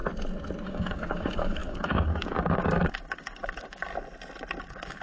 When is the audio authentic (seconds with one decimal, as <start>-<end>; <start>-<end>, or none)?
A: 0.0-0.6; 3.9-4.6